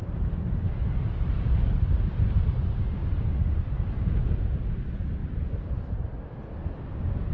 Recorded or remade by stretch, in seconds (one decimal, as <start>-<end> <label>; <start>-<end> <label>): 0.0-0.8 recorded; 0.8-2.6 remade; 2.6-5.2 recorded; 5.2-6.0 remade; 6.0-7.3 recorded